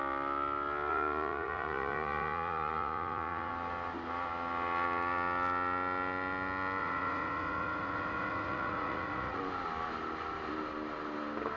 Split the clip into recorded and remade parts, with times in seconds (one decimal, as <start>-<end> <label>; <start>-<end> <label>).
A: 0.0-0.9 recorded; 0.9-3.5 remade; 3.5-6.8 recorded; 6.8-9.4 remade; 9.4-11.6 recorded